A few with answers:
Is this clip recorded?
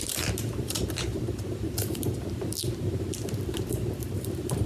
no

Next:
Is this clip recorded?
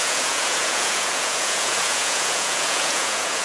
no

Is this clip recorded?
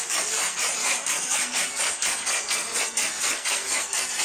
no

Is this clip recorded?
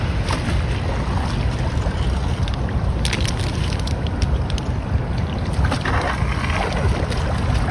yes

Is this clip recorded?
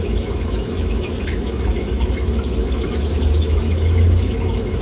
no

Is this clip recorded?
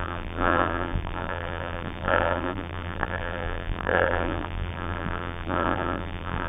no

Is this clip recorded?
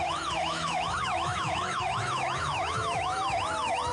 no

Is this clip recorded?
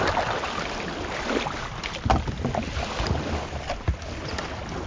yes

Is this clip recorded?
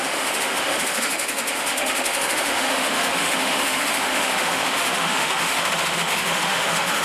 no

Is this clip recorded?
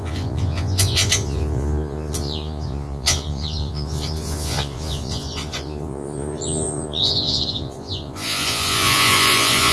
no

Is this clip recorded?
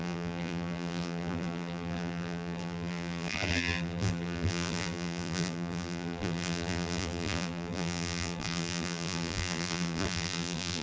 no